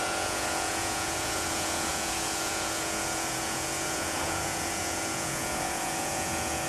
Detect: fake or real fake